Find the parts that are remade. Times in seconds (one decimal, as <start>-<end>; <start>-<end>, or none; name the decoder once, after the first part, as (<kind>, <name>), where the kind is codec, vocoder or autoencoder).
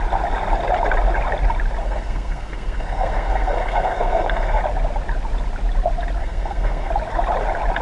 1.8-4.6 (codec, SNAC); 6.2-6.9